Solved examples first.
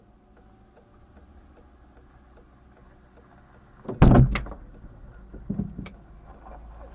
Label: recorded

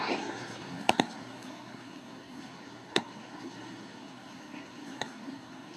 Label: remade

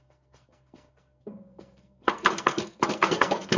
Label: remade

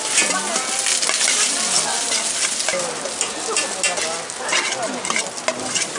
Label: recorded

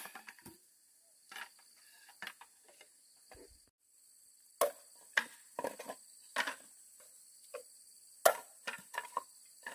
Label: recorded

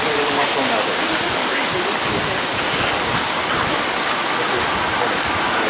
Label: recorded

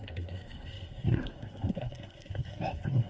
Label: remade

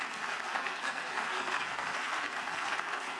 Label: remade